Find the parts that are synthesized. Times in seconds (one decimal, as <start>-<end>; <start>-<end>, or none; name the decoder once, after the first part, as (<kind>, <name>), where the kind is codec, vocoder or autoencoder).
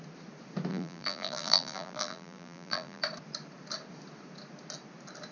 0.7-3.0 (vocoder, BigVGAN v2)